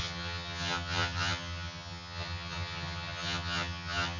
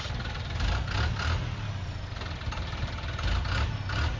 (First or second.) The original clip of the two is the second